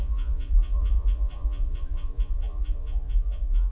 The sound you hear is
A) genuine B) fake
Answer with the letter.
B